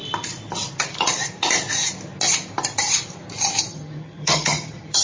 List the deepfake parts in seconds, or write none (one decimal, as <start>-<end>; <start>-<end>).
3.7-5.0

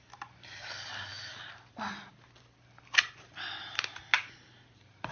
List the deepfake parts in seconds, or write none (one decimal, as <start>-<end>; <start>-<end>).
none

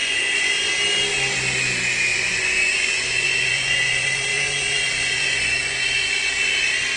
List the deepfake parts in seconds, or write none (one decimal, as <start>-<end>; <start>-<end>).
0.0-0.7; 2.1-6.3

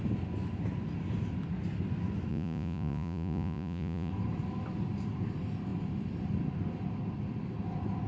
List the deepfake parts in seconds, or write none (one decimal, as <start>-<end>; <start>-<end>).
2.3-4.1